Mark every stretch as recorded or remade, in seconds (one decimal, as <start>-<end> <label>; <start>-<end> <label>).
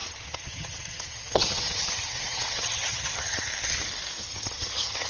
0.0-3.5 remade; 3.5-4.2 recorded; 4.2-5.1 remade